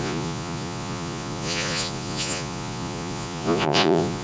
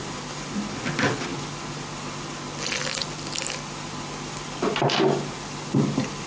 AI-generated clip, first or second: first